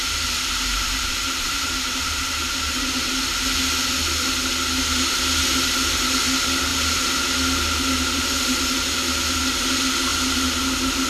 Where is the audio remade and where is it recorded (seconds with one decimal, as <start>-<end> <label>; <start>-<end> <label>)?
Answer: 0.0-0.7 recorded; 0.7-3.1 remade; 3.1-11.1 recorded